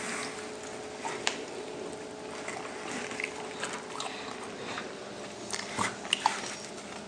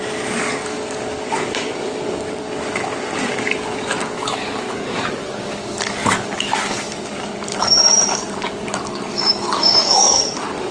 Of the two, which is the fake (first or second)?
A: second